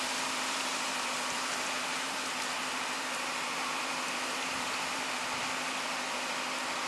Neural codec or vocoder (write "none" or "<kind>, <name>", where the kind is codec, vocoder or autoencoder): vocoder, BigVGAN v2